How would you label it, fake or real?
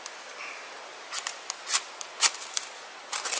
real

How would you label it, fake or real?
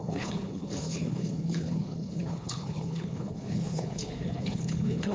fake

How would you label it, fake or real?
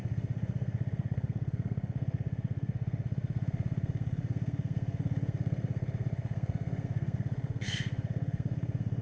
fake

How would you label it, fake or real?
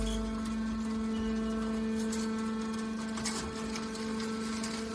real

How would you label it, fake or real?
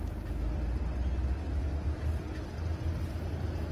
real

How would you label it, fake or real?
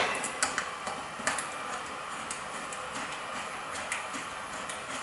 real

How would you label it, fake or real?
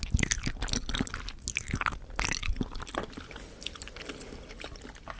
real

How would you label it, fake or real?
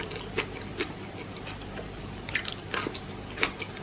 real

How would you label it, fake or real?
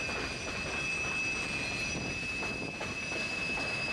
real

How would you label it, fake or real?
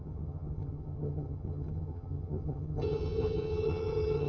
fake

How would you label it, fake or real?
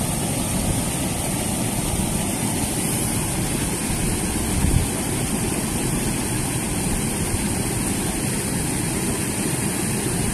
real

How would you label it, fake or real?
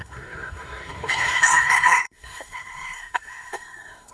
fake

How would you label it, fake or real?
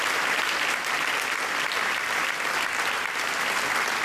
real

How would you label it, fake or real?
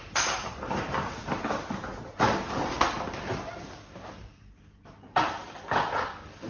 real